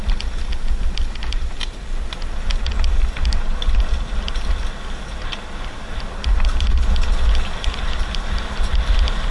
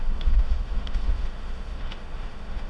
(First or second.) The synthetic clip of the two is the second